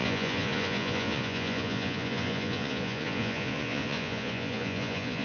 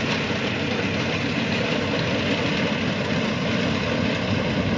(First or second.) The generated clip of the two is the first